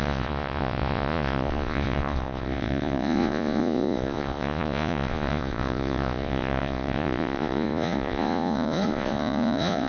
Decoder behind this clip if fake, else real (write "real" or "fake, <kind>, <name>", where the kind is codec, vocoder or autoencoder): fake, vocoder, Vocos